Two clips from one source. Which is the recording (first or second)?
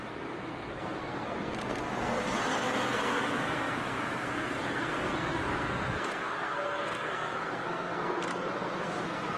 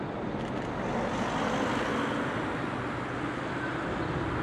second